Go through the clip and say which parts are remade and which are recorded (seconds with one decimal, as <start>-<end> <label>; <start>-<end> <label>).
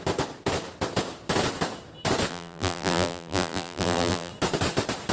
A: 0.0-2.3 recorded; 2.3-4.3 remade; 4.3-5.1 recorded